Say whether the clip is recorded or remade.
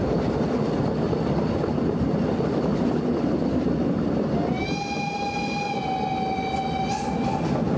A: recorded